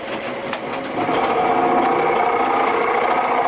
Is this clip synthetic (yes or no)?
no